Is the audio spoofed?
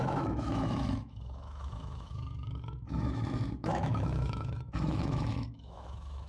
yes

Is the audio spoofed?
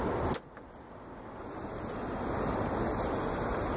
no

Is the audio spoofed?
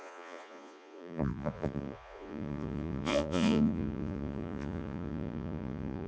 yes